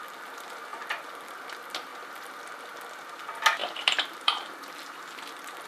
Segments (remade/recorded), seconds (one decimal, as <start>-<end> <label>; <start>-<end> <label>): 0.0-1.9 recorded; 1.9-2.4 remade; 2.4-3.6 recorded; 3.6-5.2 remade; 5.2-5.7 recorded